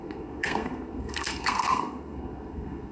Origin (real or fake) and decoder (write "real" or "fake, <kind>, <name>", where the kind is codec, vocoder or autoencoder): fake, codec, SNAC